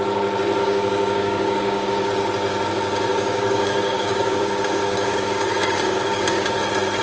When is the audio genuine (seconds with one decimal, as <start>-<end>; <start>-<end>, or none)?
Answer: 0.0-0.6; 2.1-3.1; 6.5-7.0